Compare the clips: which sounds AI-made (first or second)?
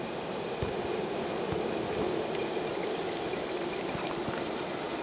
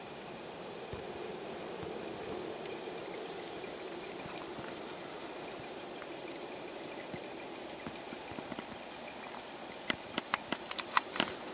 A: second